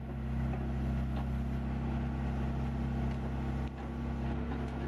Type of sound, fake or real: real